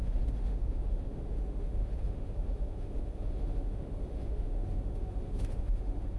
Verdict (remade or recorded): remade